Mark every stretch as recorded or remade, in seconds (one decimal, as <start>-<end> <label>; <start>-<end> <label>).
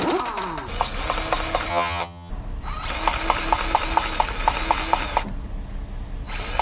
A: 0.0-1.7 recorded; 1.7-2.3 remade; 2.3-6.6 recorded